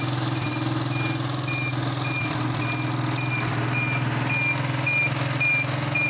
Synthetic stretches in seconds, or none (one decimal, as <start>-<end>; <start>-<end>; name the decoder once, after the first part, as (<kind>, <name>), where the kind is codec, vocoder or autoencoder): none